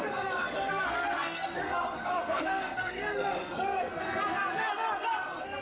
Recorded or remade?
remade